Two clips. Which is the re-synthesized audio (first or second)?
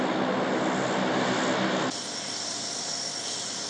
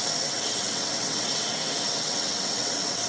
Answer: second